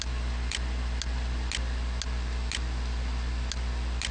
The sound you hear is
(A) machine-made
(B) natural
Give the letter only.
B